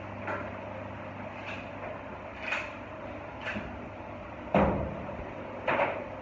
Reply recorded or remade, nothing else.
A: recorded